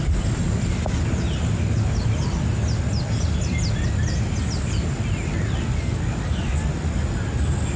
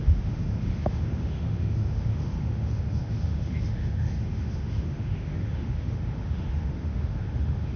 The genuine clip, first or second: first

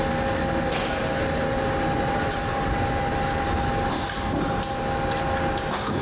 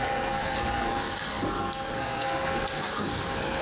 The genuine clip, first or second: first